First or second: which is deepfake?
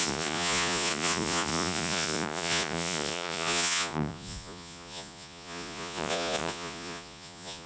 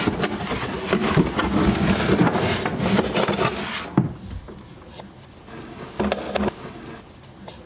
first